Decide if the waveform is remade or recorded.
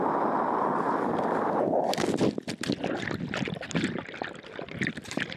recorded